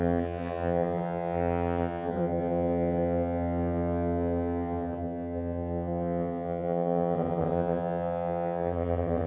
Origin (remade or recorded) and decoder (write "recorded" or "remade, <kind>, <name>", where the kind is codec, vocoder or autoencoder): remade, vocoder, HiFi-GAN